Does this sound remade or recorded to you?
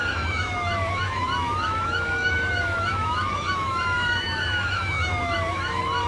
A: remade